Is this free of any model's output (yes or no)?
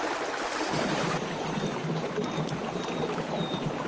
yes